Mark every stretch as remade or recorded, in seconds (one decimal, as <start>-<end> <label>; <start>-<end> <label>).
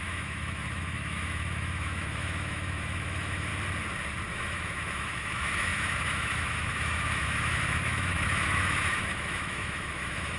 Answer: 0.0-3.5 remade; 3.5-4.3 recorded; 4.3-10.4 remade